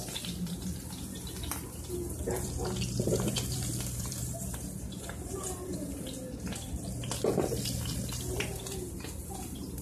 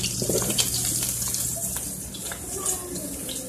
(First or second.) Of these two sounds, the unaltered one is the second